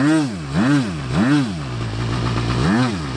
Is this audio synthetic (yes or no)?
no